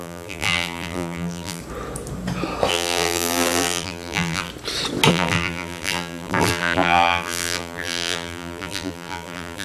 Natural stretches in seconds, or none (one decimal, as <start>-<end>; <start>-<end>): 1.6-2.7; 4.5-5.1